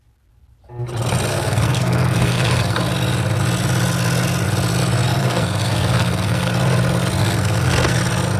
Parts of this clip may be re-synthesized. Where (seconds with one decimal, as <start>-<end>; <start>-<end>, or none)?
1.3-2.8; 5.2-6.5; 7.2-8.0